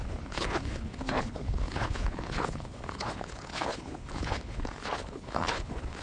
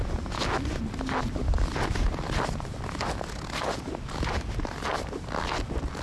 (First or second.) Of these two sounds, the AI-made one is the first